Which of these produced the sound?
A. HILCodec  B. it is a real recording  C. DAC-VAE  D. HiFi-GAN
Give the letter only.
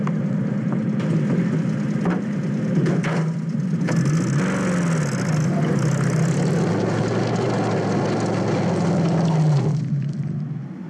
B